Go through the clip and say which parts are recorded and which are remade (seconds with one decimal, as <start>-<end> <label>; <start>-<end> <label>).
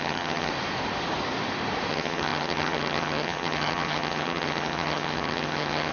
0.0-0.5 remade; 0.5-1.9 recorded; 1.9-5.9 remade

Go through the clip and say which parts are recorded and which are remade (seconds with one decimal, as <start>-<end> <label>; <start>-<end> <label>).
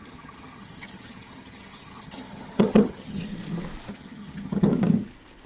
0.0-3.2 remade; 3.2-3.9 recorded; 3.9-4.7 remade; 4.7-5.5 recorded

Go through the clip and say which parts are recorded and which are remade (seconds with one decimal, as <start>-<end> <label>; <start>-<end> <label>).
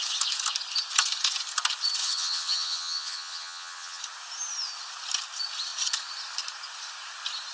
0.0-2.0 recorded; 2.0-4.0 remade; 4.0-7.5 recorded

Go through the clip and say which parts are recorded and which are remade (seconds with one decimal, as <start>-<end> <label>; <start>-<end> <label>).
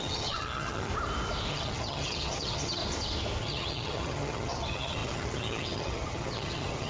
0.0-0.9 remade; 0.9-1.5 recorded; 1.5-2.8 remade; 2.8-3.4 recorded; 3.4-6.9 remade